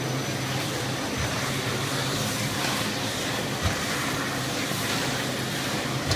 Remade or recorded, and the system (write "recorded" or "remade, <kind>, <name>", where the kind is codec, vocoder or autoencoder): recorded